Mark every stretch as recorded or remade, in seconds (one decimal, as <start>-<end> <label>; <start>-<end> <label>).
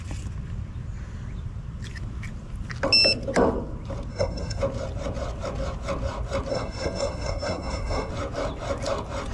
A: 0.0-4.1 recorded; 4.1-4.6 remade; 4.6-6.5 recorded; 6.5-8.1 remade; 8.1-9.3 recorded